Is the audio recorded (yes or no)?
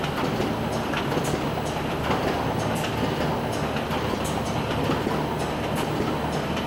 yes